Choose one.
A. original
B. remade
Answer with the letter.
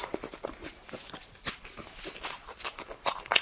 A